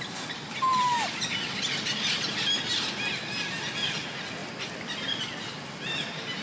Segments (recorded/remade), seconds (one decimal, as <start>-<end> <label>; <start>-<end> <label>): 0.0-0.7 recorded; 0.7-1.3 remade; 1.3-4.4 recorded; 4.4-5.3 remade; 5.3-6.4 recorded